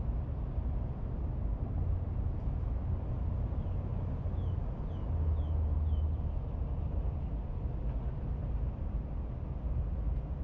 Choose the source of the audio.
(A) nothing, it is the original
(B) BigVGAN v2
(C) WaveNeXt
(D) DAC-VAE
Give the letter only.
A